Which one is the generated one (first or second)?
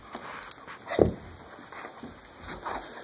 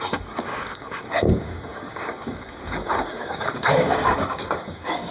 second